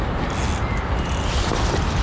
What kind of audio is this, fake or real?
real